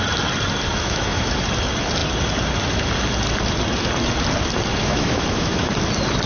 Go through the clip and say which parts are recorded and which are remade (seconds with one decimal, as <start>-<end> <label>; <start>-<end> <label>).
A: 0.0-0.7 recorded; 0.7-1.4 remade; 1.4-4.8 recorded; 4.8-5.7 remade; 5.7-6.3 recorded